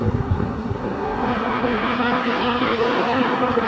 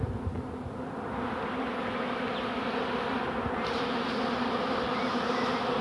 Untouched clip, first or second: second